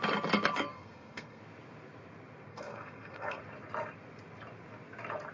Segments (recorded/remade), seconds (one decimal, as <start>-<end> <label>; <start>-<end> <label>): 0.0-0.7 recorded; 0.7-1.4 remade; 1.4-2.5 recorded; 2.5-3.4 remade; 3.4-5.3 recorded